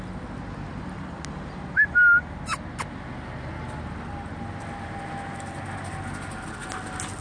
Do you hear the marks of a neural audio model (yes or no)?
no